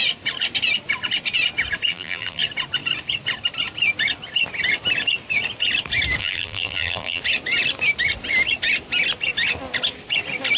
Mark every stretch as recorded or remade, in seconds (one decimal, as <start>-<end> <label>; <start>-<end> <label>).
0.0-1.9 recorded; 1.9-2.4 remade; 2.4-6.2 recorded; 6.2-7.2 remade; 7.2-10.6 recorded

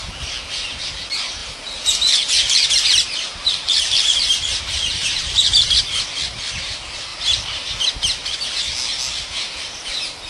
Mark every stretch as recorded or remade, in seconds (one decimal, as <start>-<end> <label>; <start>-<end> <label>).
0.0-1.4 recorded; 1.4-5.7 remade; 5.7-7.1 recorded; 7.1-7.7 remade; 7.7-10.3 recorded

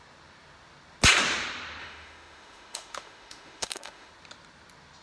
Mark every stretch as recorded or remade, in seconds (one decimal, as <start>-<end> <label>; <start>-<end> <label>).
0.0-1.8 recorded; 1.8-4.1 remade; 4.1-5.0 recorded

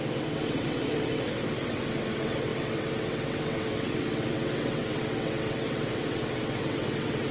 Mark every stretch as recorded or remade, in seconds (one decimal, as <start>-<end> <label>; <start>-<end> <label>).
0.0-7.3 remade

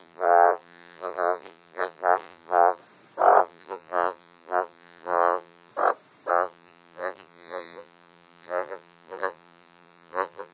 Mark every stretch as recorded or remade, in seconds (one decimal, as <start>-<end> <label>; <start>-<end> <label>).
0.0-2.8 remade; 2.8-3.4 recorded; 3.4-5.7 remade; 5.7-6.3 recorded; 6.3-10.5 remade

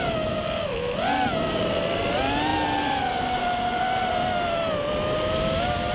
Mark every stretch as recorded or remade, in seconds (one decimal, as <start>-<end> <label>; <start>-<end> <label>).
0.0-5.9 recorded

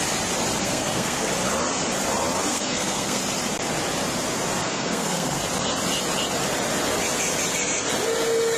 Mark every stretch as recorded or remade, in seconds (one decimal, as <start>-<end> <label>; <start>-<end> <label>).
0.0-0.6 recorded; 0.6-1.3 remade; 1.3-2.5 recorded; 2.5-3.2 remade; 3.2-4.6 recorded; 4.6-5.4 remade; 5.4-8.6 recorded